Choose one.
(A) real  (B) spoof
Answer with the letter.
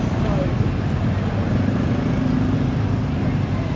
A